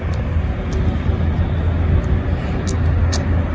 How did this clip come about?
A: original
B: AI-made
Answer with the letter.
A